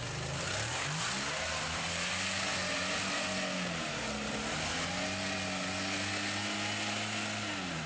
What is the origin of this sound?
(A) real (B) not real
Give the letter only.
A